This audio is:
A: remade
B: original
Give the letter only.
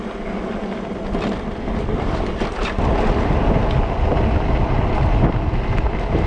B